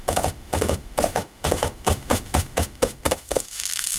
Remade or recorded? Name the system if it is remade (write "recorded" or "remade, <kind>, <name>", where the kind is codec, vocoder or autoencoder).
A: remade, autoencoder, DAC-VAE